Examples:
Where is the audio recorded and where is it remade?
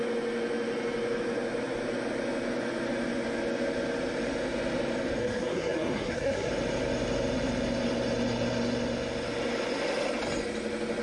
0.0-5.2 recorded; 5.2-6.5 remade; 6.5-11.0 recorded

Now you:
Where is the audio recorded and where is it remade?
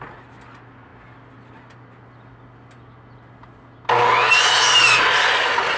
0.0-5.8 recorded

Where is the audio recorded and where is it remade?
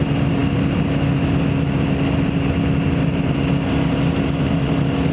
0.0-5.1 recorded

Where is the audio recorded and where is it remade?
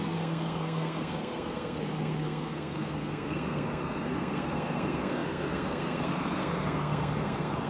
0.0-7.7 remade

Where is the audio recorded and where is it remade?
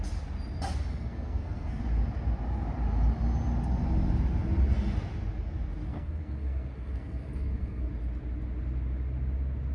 0.0-0.9 recorded; 0.9-1.8 remade; 1.8-5.9 recorded; 5.9-7.9 remade; 7.9-9.7 recorded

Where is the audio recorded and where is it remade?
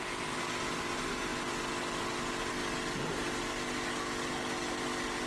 0.0-5.3 recorded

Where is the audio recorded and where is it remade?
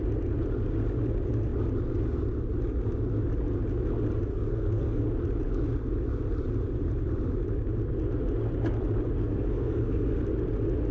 0.0-4.3 recorded; 4.3-5.0 remade; 5.0-9.2 recorded; 9.2-10.2 remade; 10.2-10.9 recorded